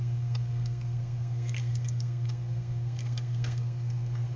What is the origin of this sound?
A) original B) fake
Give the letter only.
B